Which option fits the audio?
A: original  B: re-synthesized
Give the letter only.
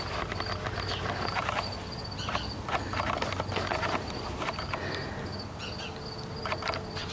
A